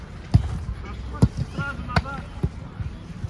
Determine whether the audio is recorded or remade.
recorded